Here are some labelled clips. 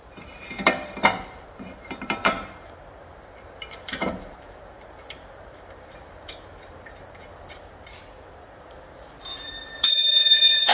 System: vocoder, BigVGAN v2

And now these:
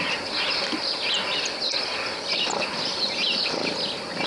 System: none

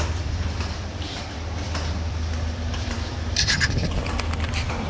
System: vocoder, BigVGAN v2